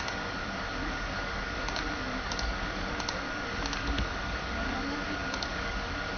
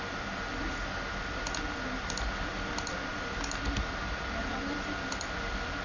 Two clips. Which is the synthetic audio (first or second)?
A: first